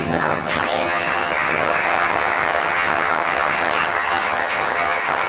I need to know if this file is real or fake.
fake